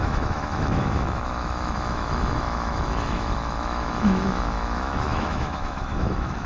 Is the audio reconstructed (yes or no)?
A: yes